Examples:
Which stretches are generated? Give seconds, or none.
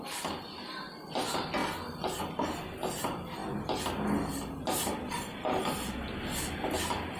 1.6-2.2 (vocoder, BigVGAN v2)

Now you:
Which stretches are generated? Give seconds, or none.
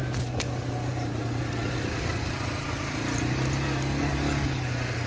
none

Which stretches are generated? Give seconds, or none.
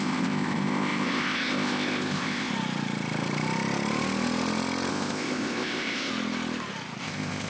0.0-2.5 (codec, ZipCodec); 4.9-6.1; 7.0-7.5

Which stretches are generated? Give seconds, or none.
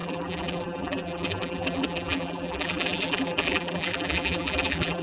0.0-5.0 (vocoder, BigVGAN v2)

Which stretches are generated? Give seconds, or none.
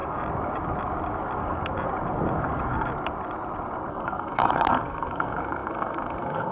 3.9-6.5 (codec, SNAC)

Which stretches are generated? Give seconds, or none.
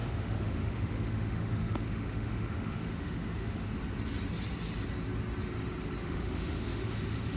0.0-3.7 (autoencoder, DAC-VAE); 6.0-7.4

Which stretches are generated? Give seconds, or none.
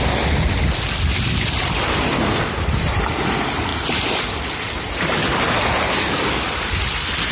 none